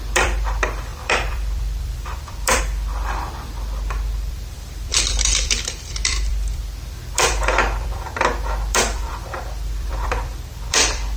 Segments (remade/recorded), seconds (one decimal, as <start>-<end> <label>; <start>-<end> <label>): 0.0-11.2 remade